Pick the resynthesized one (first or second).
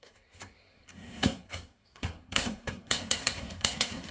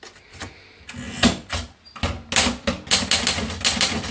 first